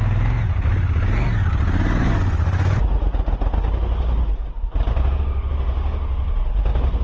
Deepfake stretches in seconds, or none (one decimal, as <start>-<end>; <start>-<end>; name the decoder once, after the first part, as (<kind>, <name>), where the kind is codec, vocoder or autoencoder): 2.0-2.8 (vocoder, Vocos)